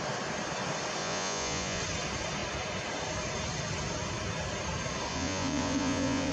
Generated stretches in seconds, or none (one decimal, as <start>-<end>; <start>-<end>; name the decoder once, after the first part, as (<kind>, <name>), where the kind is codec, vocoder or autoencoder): 1.0-1.8 (vocoder, Vocos); 5.1-6.3